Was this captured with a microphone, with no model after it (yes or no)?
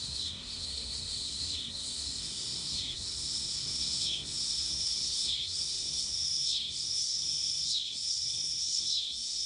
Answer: no